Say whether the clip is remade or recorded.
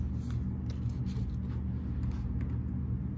recorded